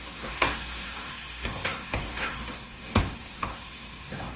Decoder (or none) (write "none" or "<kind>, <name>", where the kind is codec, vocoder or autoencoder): codec, SNAC